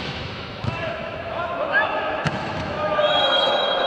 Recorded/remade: remade